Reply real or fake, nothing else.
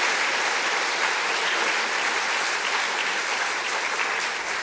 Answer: real